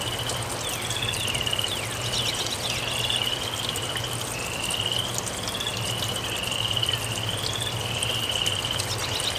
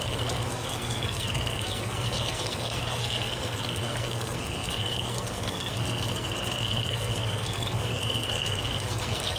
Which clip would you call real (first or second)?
first